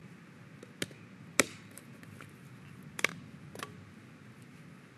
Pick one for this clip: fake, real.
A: real